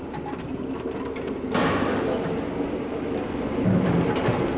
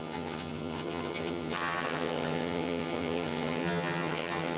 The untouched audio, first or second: first